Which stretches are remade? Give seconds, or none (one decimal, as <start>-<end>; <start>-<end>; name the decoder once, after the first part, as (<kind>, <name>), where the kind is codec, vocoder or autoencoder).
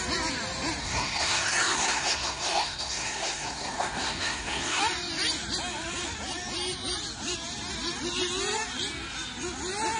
0.8-4.8 (codec, SNAC)